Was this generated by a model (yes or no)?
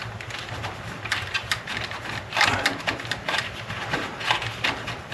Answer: no